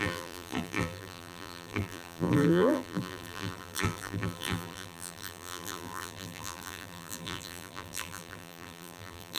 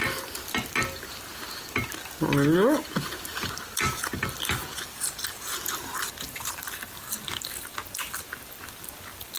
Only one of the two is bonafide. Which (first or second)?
second